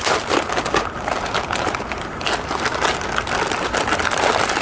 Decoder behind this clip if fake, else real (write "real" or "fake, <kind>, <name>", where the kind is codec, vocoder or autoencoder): real